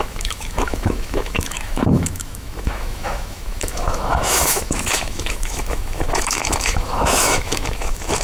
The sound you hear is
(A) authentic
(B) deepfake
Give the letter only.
B